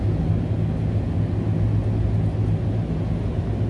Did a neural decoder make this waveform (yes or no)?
no